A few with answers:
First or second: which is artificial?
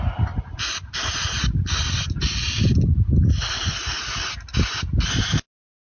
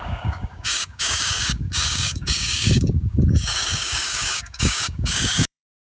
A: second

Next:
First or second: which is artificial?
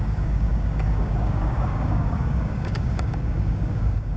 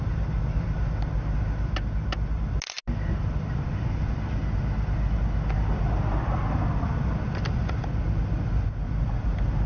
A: first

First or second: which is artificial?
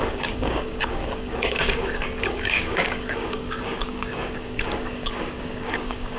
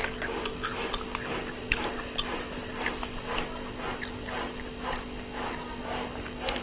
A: first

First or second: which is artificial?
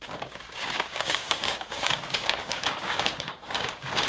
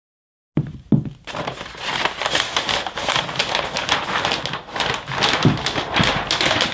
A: first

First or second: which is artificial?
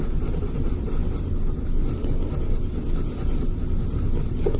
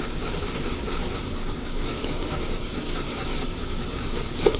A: second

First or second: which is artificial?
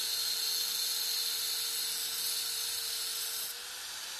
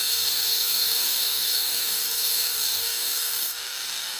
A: second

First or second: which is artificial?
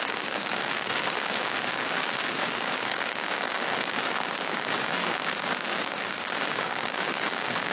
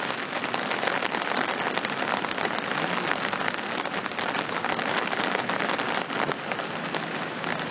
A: first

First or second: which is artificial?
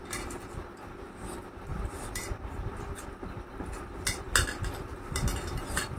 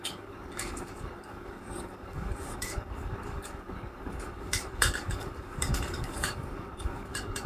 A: second